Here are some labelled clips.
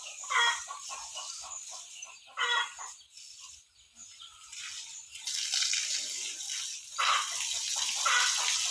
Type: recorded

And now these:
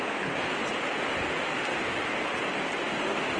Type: recorded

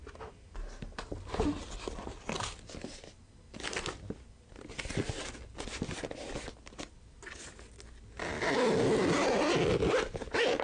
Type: recorded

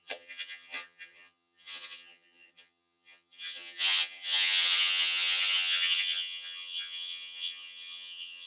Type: remade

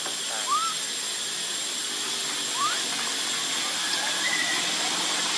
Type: recorded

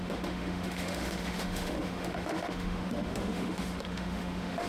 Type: remade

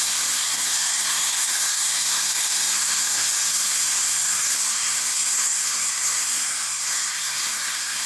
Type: remade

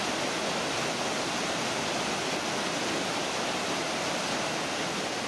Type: recorded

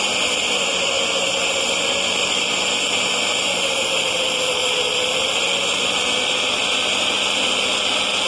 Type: recorded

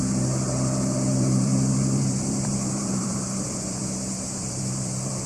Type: remade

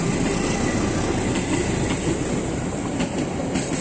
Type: recorded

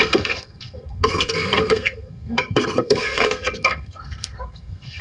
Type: remade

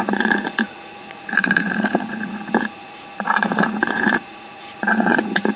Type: remade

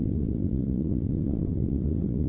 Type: remade